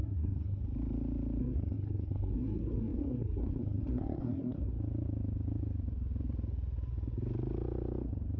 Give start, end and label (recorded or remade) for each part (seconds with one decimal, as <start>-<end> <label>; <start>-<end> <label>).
0.0-0.6 remade; 0.6-1.4 recorded; 1.4-4.7 remade; 4.7-8.4 recorded